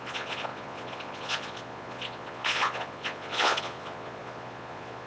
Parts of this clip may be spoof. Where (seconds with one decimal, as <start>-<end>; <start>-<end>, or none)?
0.0-5.1